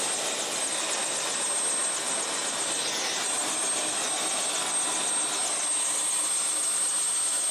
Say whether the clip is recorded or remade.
recorded